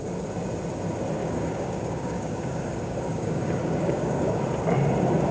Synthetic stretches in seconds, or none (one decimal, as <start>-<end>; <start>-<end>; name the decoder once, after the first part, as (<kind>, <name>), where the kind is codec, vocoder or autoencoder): 1.2-4.4 (codec, DAC)